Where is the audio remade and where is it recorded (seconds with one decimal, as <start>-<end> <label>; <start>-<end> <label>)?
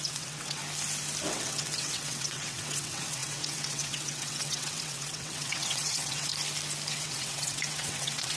0.0-0.6 remade; 0.6-1.3 recorded; 1.3-6.3 remade; 6.3-6.9 recorded; 6.9-8.4 remade